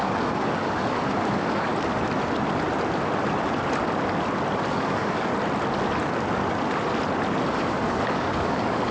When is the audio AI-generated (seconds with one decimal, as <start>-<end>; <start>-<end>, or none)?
0.0-1.7; 4.7-5.3; 7.5-8.9